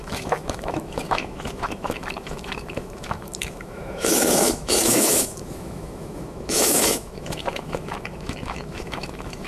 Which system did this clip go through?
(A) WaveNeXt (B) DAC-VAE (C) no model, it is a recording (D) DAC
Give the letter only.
B